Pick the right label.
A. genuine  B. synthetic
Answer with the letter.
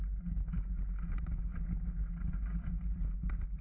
A